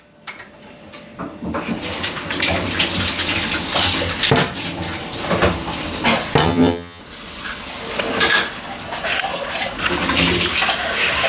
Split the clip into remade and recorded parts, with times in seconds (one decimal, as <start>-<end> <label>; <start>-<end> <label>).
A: 0.0-6.4 recorded; 6.4-7.0 remade; 7.0-11.3 recorded